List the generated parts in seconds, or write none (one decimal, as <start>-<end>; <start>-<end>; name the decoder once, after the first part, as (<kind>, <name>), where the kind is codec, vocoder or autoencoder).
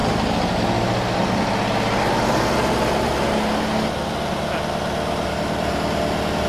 none